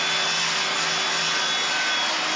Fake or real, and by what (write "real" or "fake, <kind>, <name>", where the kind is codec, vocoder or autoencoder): real